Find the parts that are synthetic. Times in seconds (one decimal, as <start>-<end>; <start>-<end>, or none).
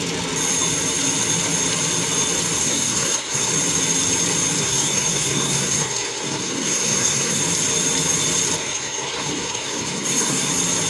2.6-3.5; 4.6-7.4; 8.6-10.5